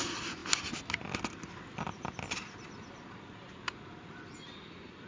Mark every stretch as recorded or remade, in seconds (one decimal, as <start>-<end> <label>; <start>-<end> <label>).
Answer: 0.0-5.1 recorded